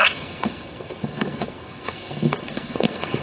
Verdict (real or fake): fake